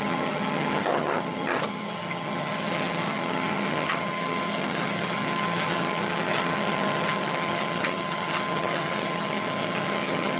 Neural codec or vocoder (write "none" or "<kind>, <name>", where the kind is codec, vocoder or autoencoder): vocoder, HiFi-GAN